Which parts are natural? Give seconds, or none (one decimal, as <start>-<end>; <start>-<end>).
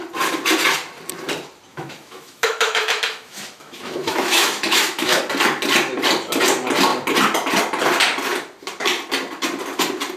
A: 0.0-1.7; 5.2-10.2